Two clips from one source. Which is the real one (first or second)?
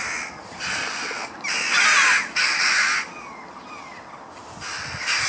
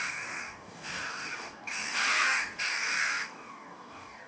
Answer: first